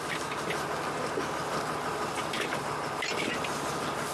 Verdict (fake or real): real